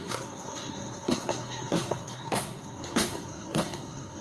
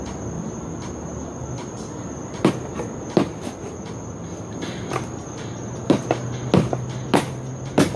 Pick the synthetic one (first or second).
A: first